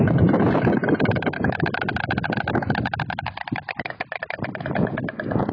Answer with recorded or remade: recorded